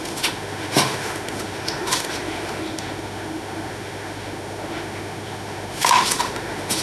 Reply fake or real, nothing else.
fake